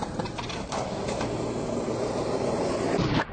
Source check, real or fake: fake